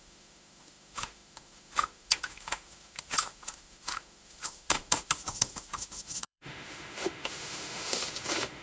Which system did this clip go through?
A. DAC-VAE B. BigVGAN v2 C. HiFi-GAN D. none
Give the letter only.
A